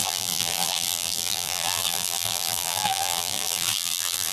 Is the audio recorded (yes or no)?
no